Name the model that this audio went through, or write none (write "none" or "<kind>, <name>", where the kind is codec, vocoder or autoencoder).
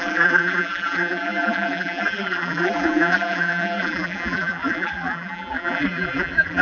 vocoder, BigVGAN v2